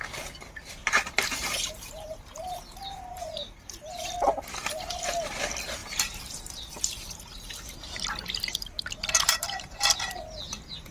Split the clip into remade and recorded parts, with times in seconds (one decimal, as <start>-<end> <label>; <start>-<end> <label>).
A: 0.0-0.8 recorded; 0.8-4.1 remade; 4.1-5.8 recorded; 5.8-9.8 remade; 9.8-10.9 recorded